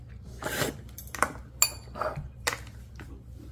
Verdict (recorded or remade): recorded